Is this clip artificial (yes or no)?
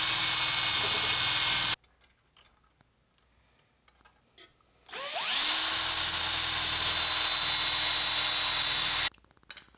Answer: no